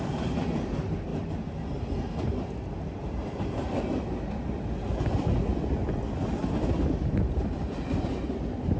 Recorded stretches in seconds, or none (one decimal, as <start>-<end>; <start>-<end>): 0.0-8.8

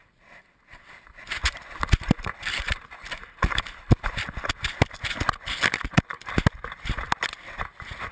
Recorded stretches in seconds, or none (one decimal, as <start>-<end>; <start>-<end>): 4.5-8.1

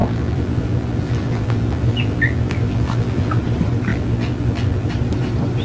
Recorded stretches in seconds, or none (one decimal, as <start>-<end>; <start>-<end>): 3.4-3.9; 4.9-5.6

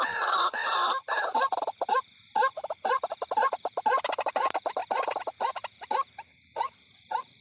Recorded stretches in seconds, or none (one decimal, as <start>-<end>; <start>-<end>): 0.6-2.0; 4.8-5.5

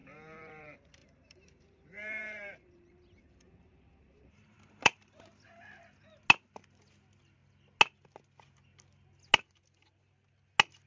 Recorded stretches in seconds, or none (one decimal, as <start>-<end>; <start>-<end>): 0.6-1.0; 5.2-10.9

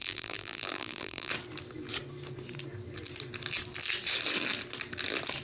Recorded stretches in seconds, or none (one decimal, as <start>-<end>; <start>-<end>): 1.3-5.4

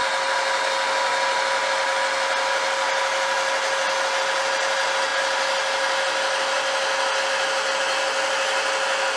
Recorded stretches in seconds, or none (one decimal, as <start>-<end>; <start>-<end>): 0.0-9.2

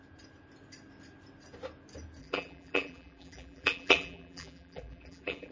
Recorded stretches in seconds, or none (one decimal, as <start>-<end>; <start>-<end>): 0.0-2.2